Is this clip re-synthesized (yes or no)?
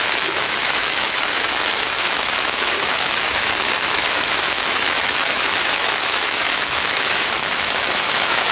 yes